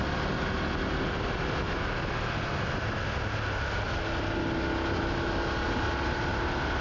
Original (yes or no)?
yes